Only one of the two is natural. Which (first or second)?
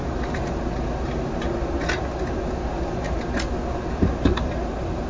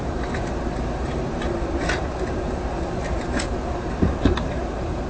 first